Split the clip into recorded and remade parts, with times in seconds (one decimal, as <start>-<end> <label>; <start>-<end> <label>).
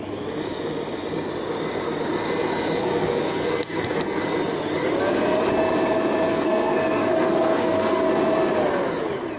0.0-2.8 recorded; 2.8-4.2 remade; 4.2-6.3 recorded; 6.3-8.1 remade; 8.1-9.4 recorded